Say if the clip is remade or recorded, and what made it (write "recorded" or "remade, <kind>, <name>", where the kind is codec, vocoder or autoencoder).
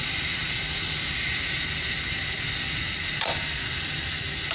recorded